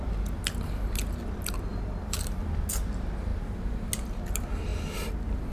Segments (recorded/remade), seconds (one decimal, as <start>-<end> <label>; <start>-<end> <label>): 0.0-5.5 recorded